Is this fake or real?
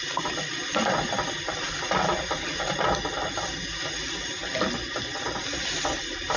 real